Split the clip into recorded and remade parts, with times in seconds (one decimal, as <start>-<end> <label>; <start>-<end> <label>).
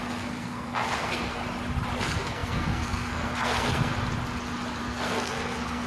0.0-1.4 remade; 1.4-2.0 recorded; 2.0-3.9 remade; 3.9-4.8 recorded; 4.8-5.9 remade